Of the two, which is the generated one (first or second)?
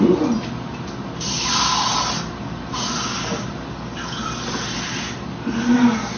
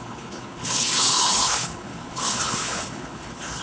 second